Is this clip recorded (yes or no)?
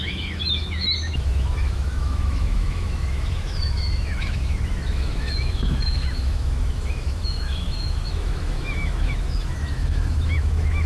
no